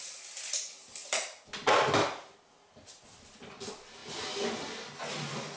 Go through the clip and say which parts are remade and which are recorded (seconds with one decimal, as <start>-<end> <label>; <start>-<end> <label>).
0.0-5.6 recorded